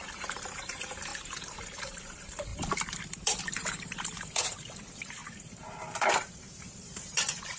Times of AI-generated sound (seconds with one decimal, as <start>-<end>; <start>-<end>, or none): 0.0-1.1; 1.8-7.6